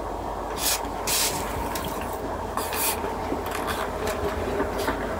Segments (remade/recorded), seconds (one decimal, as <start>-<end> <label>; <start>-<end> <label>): 0.0-5.2 recorded